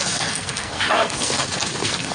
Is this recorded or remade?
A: remade